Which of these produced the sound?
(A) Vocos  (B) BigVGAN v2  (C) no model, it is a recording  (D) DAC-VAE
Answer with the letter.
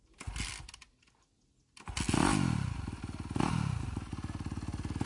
C